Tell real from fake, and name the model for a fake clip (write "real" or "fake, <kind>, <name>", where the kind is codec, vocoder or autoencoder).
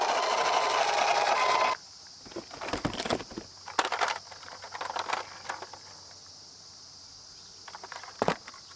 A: real